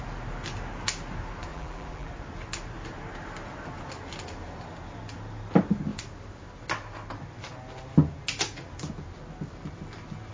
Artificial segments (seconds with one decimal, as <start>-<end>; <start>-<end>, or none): 1.5-2.1